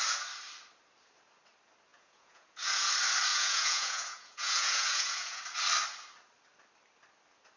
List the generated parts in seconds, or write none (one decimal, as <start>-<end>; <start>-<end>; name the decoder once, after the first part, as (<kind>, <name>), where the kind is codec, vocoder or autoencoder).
1.9-2.9 (vocoder, Vocos); 3.3-5.4